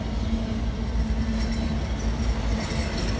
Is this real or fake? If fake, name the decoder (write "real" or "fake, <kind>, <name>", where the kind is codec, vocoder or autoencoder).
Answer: real